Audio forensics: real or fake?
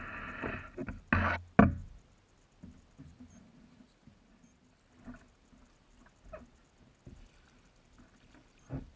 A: real